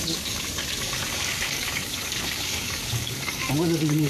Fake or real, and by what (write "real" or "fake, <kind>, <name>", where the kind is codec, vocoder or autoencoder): fake, codec, DAC